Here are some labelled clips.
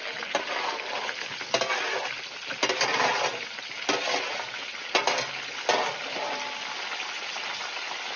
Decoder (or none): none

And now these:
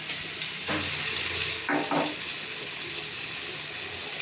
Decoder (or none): none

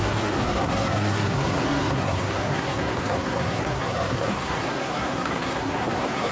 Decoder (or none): codec, SNAC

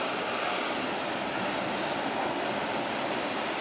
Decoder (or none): none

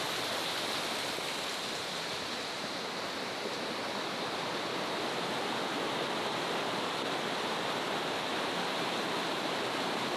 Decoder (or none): none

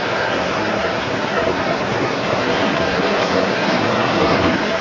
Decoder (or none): codec, SNAC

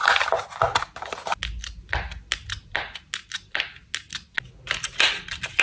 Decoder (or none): none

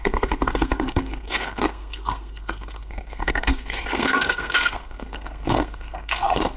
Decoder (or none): codec, SNAC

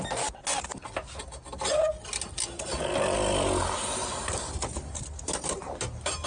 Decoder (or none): none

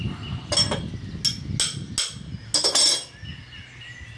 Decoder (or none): none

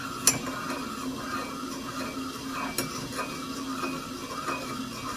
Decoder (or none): none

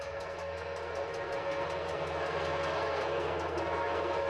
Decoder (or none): codec, SNAC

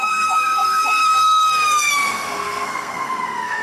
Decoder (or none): codec, SNAC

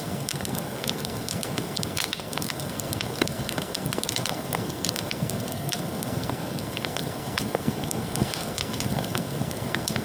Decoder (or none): codec, SNAC